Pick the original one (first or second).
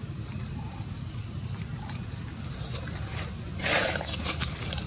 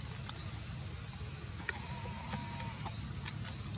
second